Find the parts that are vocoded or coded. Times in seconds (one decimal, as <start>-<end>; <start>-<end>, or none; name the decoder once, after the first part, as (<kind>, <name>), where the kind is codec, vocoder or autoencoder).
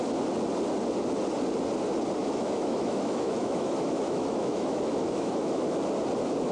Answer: 2.2-5.8 (autoencoder, DAC-VAE)